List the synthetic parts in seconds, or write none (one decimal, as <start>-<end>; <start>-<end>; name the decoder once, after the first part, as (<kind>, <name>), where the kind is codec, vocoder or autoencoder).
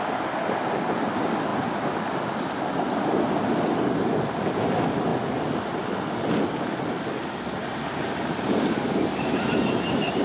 7.6-10.2 (vocoder, BigVGAN v2)